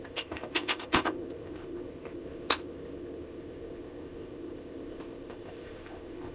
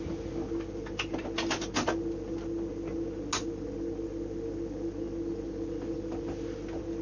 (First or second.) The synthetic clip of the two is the first